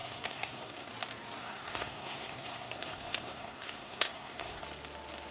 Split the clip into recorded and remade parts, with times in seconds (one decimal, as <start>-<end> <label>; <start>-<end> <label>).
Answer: 0.0-0.9 remade; 0.9-1.4 recorded; 1.4-4.6 remade; 4.6-5.3 recorded